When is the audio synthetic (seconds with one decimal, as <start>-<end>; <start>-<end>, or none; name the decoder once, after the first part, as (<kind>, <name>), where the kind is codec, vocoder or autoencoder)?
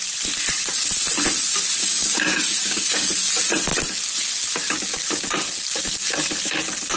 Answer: 1.8-3.1 (codec, DAC)